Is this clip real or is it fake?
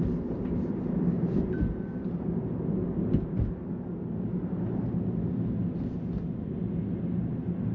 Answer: real